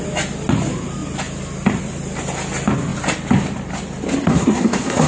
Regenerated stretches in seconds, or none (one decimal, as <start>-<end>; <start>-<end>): 4.2-5.1

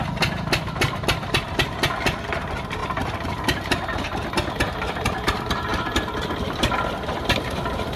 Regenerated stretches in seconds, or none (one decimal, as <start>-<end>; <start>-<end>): none

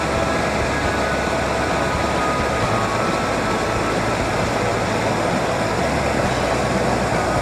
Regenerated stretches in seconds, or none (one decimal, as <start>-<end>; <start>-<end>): none

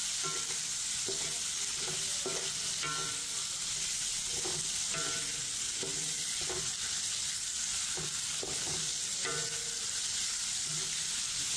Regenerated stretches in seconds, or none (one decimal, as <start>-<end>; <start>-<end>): none

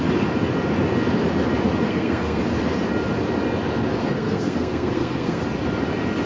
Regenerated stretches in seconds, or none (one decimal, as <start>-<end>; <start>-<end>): 1.8-2.4; 4.0-5.4